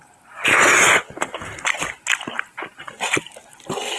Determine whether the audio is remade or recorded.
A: recorded